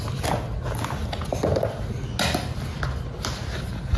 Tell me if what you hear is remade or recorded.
recorded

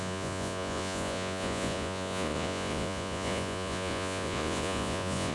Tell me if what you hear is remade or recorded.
remade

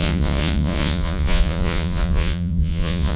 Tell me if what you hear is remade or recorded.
remade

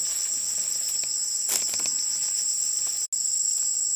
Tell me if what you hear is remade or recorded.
recorded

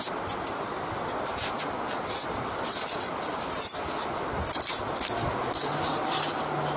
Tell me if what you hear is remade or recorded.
recorded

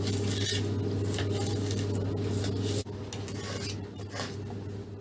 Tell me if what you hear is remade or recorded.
recorded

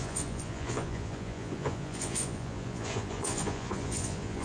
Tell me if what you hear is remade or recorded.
remade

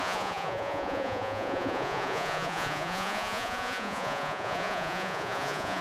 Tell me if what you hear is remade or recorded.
remade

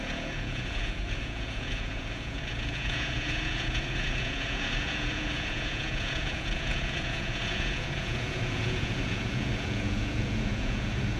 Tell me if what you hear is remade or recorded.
remade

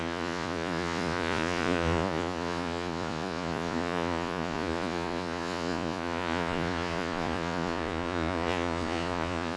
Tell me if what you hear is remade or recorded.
remade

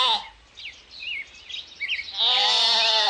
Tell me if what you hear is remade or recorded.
recorded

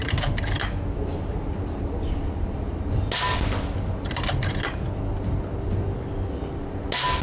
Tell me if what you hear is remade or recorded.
recorded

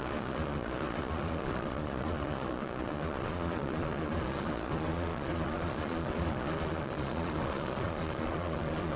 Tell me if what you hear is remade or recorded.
remade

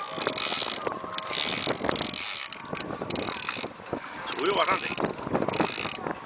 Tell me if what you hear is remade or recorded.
recorded